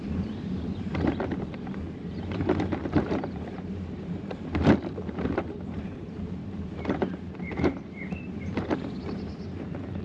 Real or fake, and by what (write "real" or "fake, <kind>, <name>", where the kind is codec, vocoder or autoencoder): fake, vocoder, BigVGAN v2